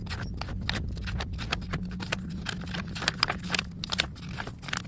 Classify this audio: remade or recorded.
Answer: recorded